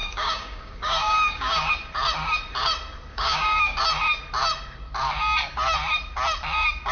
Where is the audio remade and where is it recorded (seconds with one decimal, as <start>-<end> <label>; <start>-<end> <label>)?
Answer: 0.0-1.7 remade; 1.7-3.1 recorded; 3.1-3.8 remade; 3.8-6.9 recorded